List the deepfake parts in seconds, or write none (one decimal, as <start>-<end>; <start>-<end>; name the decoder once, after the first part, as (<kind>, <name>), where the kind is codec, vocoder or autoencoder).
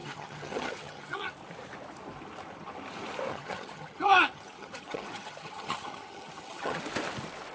0.0-1.3 (vocoder, HiFi-GAN); 3.3-6.8